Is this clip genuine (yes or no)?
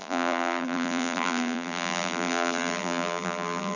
no